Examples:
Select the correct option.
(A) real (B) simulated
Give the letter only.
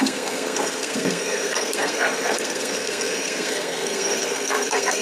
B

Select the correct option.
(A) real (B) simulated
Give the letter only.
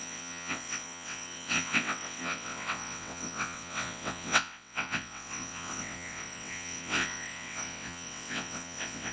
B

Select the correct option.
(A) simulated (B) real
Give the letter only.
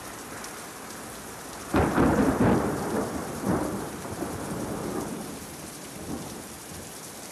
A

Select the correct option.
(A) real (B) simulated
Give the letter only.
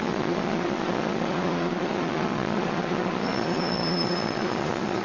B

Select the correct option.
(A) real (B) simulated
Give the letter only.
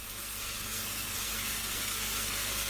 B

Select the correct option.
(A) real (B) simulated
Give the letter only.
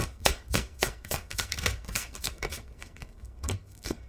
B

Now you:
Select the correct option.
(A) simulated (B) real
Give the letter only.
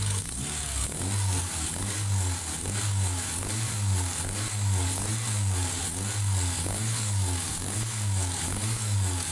A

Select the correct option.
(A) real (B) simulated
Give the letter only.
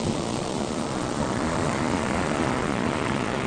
B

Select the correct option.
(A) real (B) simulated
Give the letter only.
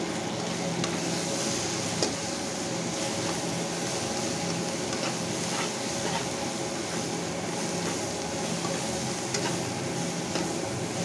A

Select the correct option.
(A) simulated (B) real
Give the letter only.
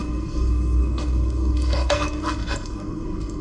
A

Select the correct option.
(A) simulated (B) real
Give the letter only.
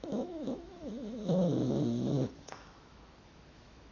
A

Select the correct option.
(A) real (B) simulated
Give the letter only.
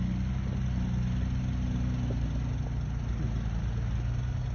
A